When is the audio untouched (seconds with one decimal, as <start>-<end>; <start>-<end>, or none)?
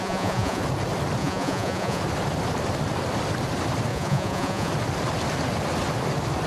0.6-1.2; 2.0-3.9; 4.7-6.5